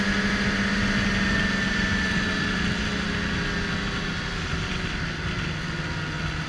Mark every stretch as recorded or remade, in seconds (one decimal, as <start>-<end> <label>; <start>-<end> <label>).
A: 0.0-6.5 recorded